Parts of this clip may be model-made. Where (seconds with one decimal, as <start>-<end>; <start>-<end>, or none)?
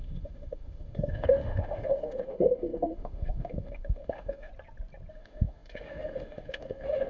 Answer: 0.0-4.5; 5.1-7.1